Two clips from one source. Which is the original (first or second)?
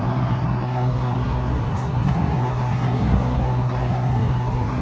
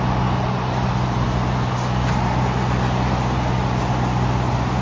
second